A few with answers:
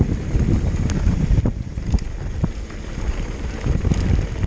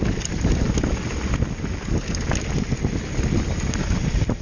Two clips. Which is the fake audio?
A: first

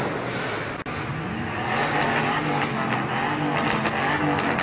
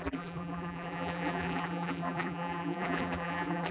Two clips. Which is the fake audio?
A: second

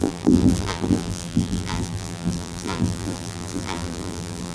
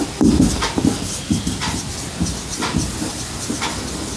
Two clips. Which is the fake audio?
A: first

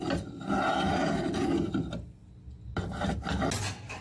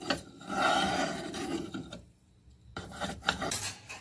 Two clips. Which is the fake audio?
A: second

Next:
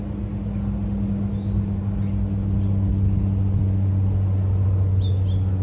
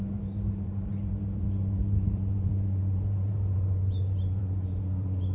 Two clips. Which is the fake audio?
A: second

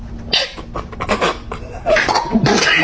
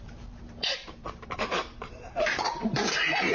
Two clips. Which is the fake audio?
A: second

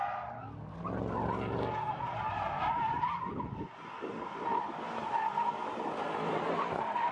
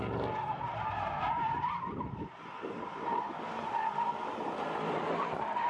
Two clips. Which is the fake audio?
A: second